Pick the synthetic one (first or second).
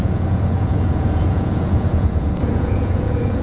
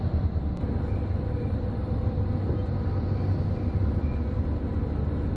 first